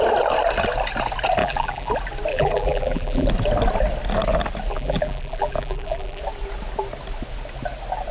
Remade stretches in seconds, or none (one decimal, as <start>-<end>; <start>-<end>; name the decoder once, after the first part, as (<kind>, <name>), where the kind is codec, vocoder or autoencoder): 1.4-1.9 (vocoder, BigVGAN v2); 2.3-3.3; 4.7-6.2